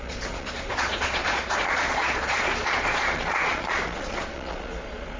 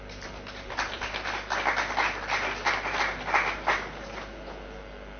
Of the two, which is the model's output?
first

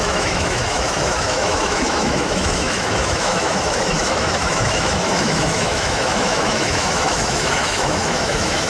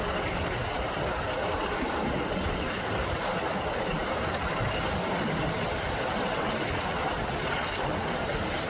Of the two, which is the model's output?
first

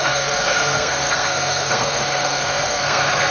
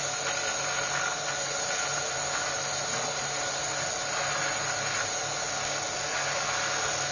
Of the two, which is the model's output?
first